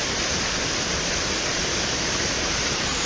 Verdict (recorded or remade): recorded